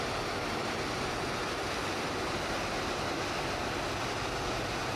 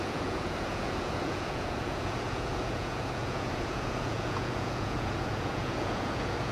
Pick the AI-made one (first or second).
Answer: second